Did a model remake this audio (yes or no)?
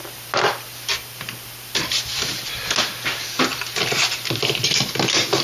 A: no